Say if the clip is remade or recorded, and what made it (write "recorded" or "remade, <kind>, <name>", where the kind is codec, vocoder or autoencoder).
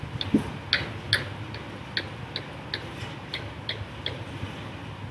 recorded